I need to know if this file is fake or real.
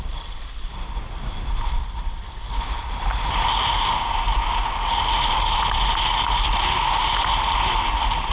real